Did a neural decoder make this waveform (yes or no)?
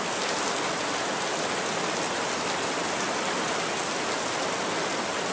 no